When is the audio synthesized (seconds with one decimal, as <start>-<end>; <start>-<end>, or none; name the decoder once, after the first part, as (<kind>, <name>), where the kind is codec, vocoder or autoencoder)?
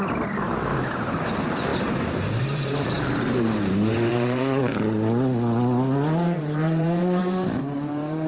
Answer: 0.0-4.7 (vocoder, BigVGAN v2); 6.4-8.3